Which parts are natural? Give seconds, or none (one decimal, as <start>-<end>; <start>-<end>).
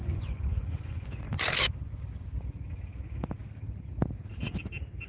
1.4-5.1